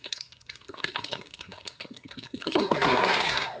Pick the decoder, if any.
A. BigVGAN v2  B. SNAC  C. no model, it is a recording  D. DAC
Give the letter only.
B